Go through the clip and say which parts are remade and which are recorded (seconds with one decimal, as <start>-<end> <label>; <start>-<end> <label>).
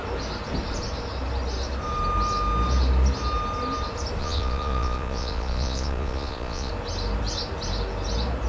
0.0-4.2 recorded; 4.2-6.7 remade; 6.7-8.5 recorded